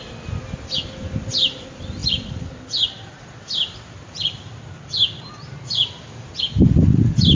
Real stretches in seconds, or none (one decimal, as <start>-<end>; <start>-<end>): 0.0-7.3